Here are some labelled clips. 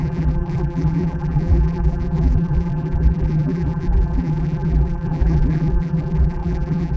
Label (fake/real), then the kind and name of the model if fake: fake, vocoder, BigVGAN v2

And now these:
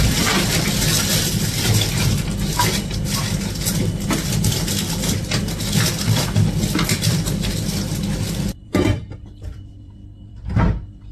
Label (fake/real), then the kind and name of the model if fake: fake, vocoder, BigVGAN v2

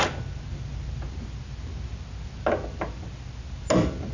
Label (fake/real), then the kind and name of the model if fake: real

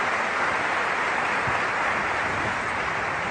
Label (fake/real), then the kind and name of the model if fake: real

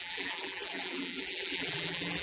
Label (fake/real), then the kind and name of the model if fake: fake, vocoder, BigVGAN v2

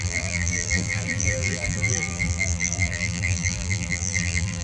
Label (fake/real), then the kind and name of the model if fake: fake, vocoder, BigVGAN v2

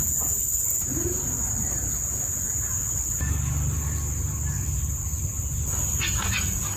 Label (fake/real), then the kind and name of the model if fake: real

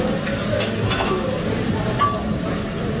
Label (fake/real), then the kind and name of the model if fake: real